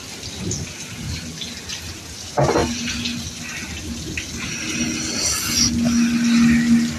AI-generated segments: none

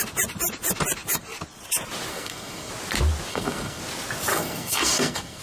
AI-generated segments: 2.1-2.7 (codec, SNAC); 3.3-3.8; 4.3-5.4

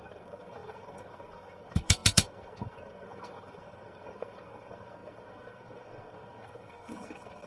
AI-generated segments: 0.0-7.5 (codec, SNAC)

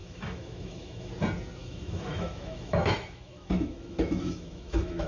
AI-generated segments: 0.0-1.1 (autoencoder, DAC-VAE); 1.6-5.1